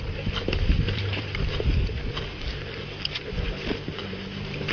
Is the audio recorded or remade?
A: remade